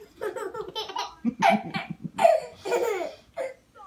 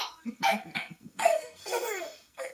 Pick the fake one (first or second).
second